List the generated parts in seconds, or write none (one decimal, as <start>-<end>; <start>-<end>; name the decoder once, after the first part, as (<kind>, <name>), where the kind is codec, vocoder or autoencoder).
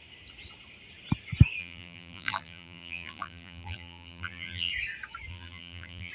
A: 1.6-4.7 (vocoder, BigVGAN v2); 5.3-6.1